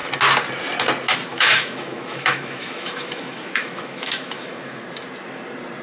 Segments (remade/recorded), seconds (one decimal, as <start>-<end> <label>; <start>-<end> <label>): 0.0-1.3 recorded; 1.3-4.8 remade; 4.8-5.8 recorded